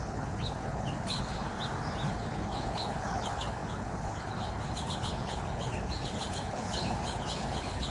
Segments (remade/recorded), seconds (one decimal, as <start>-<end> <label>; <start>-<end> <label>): 0.0-1.5 remade; 1.5-2.1 recorded; 2.1-7.9 remade